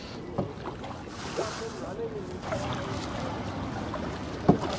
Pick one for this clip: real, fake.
real